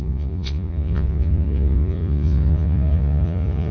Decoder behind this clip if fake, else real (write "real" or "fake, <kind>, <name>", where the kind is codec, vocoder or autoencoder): fake, vocoder, Vocos